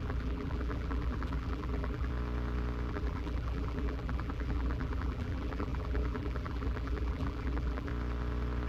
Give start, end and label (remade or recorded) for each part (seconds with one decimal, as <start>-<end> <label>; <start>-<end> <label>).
0.0-2.1 remade; 2.1-2.9 recorded; 2.9-7.9 remade; 7.9-8.7 recorded